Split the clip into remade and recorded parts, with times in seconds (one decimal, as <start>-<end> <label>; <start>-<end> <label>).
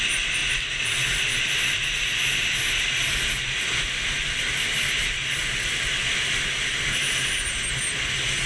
0.0-8.5 recorded